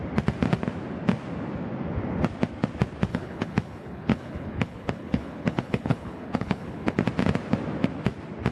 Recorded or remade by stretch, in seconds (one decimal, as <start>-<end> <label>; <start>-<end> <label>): 0.0-3.1 recorded; 3.1-7.0 remade; 7.0-8.5 recorded